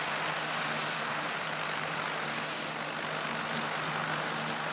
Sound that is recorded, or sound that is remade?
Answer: recorded